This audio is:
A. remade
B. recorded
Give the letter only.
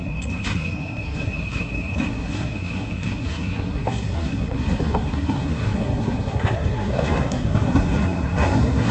A